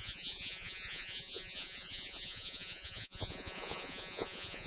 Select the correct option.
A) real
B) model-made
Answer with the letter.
B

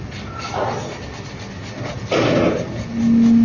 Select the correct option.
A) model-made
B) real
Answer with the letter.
B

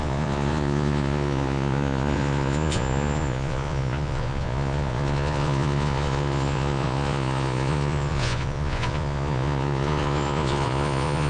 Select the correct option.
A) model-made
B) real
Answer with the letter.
A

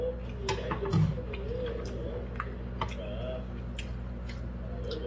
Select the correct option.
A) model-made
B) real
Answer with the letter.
B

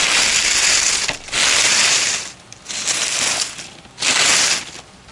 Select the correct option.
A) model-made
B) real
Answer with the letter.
B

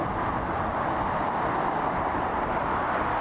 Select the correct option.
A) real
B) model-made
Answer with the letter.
A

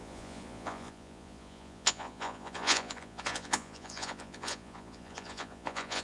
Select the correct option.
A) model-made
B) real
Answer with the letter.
A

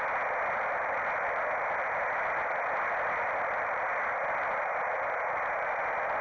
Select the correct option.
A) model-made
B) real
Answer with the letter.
B